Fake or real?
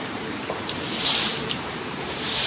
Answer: fake